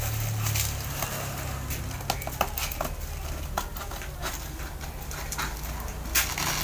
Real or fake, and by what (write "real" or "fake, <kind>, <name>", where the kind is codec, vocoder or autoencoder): real